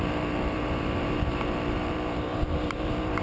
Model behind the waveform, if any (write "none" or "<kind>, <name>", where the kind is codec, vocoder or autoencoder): vocoder, BigVGAN v2